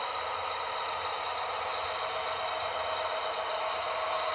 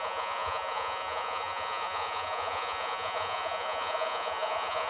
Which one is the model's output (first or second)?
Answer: second